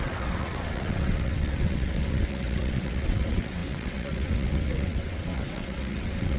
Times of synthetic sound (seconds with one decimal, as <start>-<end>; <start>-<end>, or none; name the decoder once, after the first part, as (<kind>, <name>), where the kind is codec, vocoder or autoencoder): 0.0-6.4 (vocoder, WaveNeXt)